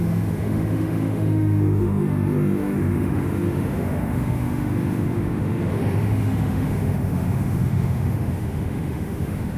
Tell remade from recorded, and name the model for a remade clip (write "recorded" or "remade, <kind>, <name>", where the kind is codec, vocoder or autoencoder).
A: remade, autoencoder, DAC-VAE